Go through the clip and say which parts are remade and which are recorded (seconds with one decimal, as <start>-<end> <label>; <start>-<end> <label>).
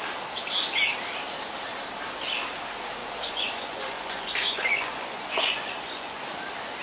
0.0-3.0 recorded; 3.0-6.2 remade; 6.2-6.8 recorded